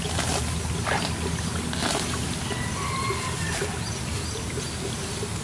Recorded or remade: recorded